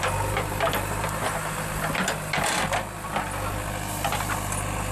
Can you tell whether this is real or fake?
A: real